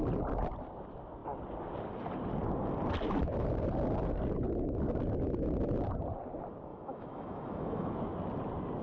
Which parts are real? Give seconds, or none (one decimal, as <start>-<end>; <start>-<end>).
0.0-6.7; 8.0-8.8